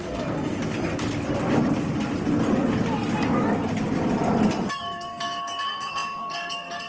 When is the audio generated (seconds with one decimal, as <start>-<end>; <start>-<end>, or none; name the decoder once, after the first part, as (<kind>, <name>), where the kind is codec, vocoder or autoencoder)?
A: 0.0-0.6 (codec, SNAC); 4.7-6.9